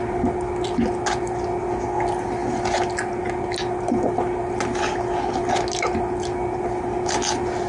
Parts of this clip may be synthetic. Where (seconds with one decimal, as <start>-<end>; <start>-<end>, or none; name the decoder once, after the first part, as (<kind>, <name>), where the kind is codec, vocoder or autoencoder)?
none